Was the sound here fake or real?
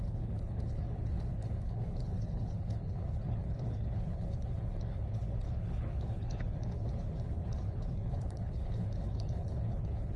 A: fake